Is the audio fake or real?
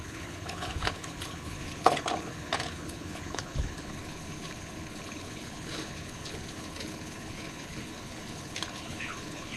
fake